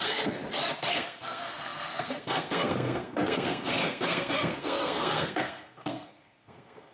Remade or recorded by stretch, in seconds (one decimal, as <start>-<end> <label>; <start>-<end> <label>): 0.0-0.4 remade; 0.4-0.9 recorded; 0.9-6.9 remade